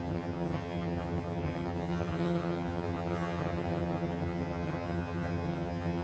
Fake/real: fake